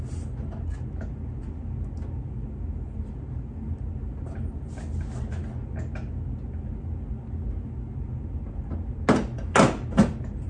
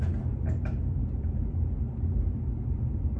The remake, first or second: second